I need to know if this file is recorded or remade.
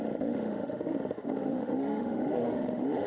remade